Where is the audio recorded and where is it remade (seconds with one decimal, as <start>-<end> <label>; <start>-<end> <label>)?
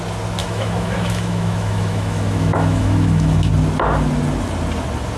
0.0-0.4 recorded; 0.4-3.5 remade; 3.5-5.2 recorded